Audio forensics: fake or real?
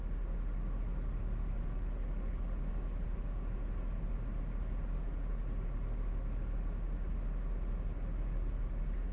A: real